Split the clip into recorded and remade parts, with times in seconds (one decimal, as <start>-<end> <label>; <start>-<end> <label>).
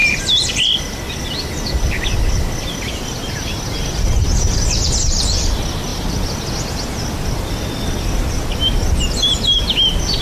0.0-0.8 remade; 0.8-10.2 recorded